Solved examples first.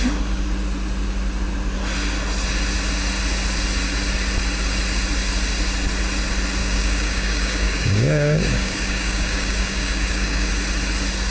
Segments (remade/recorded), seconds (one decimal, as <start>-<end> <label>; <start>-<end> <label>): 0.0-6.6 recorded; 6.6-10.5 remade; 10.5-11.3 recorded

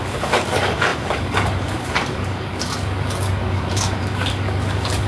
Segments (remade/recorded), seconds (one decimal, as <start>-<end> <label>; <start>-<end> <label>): 0.0-5.1 remade

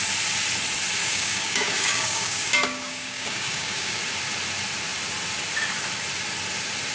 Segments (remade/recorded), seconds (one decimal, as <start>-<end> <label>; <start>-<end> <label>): 0.0-1.0 recorded; 1.0-4.0 remade; 4.0-6.9 recorded

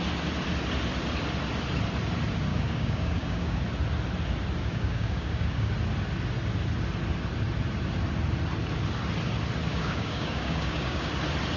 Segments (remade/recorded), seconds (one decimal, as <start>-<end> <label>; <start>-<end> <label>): 0.0-2.5 recorded; 2.5-3.6 remade; 3.6-4.6 recorded; 4.6-5.7 remade; 5.7-9.7 recorded; 9.7-11.1 remade; 11.1-11.6 recorded

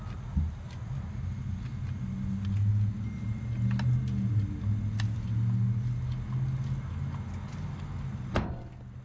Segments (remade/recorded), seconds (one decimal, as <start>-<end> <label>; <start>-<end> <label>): 0.0-9.0 recorded